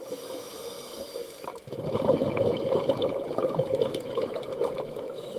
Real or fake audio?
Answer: fake